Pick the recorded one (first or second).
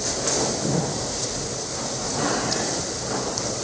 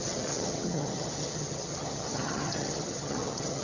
first